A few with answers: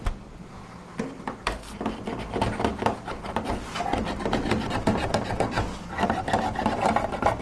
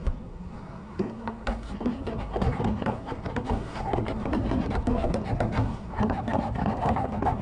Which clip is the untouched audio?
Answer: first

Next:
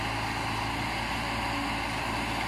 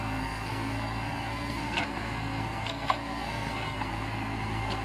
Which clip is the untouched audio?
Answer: first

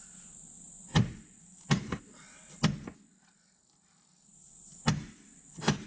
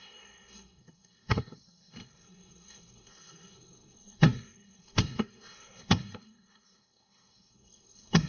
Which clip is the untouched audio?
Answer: first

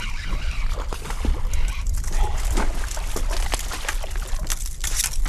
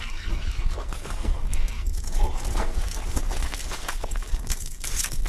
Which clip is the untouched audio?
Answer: first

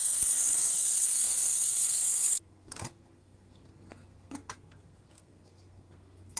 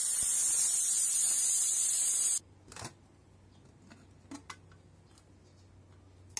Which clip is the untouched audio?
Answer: second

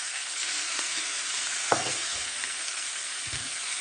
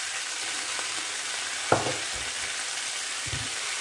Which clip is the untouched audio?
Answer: second